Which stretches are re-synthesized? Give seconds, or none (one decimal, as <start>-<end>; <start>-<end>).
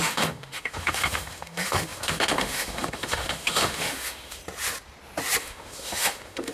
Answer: 0.0-4.4; 5.4-6.5